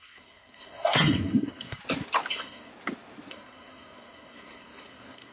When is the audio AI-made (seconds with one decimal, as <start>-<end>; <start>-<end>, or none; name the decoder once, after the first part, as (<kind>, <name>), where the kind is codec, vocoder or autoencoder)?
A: 0.0-1.8 (codec, SNAC); 2.3-2.7; 3.3-5.3